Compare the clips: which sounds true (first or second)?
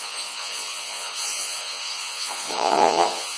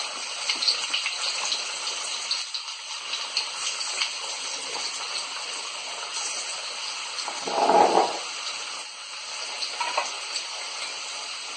second